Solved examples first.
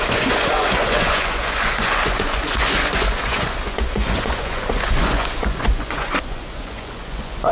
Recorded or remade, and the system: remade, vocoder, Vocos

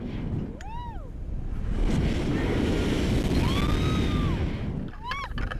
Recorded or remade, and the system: recorded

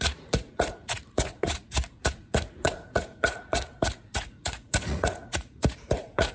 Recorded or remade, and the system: remade, vocoder, Vocos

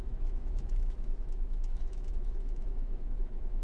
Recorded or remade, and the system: remade, autoencoder, DAC-VAE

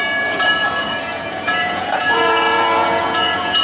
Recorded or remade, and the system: remade, vocoder, Vocos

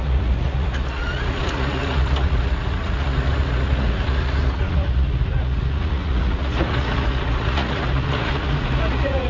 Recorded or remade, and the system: remade, vocoder, Vocos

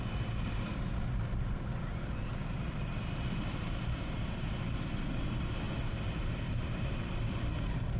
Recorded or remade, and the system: remade, vocoder, BigVGAN v2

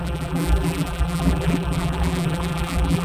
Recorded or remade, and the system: remade, vocoder, BigVGAN v2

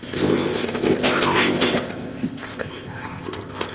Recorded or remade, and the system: remade, codec, ZipCodec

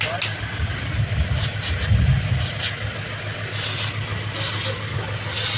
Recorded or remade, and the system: recorded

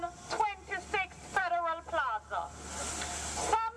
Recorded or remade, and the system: recorded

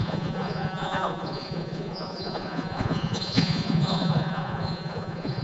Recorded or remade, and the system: remade, vocoder, Vocos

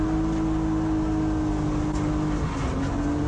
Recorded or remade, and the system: recorded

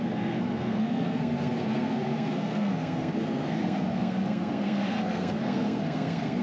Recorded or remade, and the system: remade, codec, SNAC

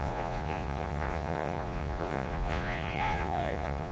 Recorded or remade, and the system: remade, vocoder, Vocos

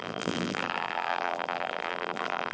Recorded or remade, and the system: remade, vocoder, BigVGAN v2